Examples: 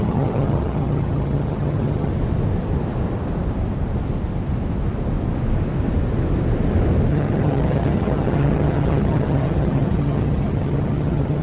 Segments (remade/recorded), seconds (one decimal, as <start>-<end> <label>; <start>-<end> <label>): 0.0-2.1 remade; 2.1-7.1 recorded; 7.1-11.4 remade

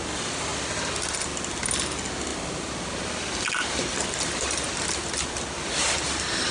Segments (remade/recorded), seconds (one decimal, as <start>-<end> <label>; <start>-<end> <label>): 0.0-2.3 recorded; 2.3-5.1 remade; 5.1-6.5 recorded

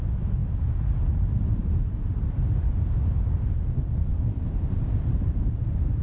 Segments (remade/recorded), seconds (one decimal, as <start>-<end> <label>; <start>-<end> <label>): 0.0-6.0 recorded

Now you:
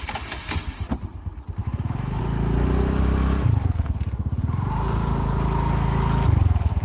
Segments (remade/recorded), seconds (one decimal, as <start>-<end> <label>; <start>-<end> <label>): 0.0-1.6 recorded; 1.6-2.2 remade; 2.2-6.8 recorded

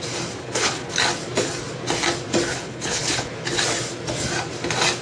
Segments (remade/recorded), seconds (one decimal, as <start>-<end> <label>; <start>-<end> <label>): 0.0-0.4 recorded; 0.4-0.9 remade; 0.9-2.5 recorded; 2.5-3.3 remade; 3.3-5.0 recorded

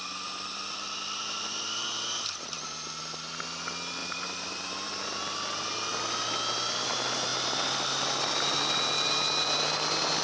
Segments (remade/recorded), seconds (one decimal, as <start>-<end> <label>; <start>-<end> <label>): 0.0-4.0 recorded; 4.0-5.0 remade; 5.0-10.2 recorded